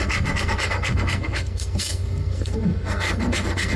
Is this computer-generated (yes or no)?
yes